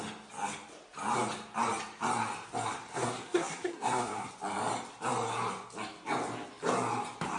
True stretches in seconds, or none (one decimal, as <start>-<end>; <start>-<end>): 0.0-2.9; 4.3-7.4